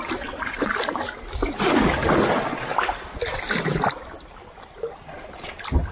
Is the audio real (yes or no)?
yes